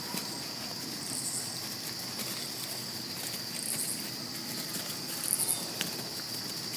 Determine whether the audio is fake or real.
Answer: real